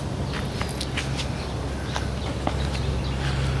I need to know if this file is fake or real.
real